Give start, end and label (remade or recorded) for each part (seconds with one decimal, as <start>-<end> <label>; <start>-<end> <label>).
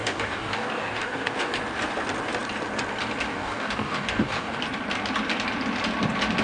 0.0-1.6 remade; 1.6-3.3 recorded; 3.3-4.6 remade; 4.6-6.4 recorded